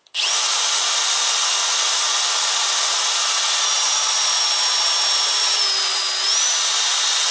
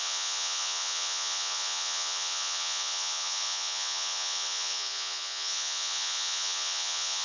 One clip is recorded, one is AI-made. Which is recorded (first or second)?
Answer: first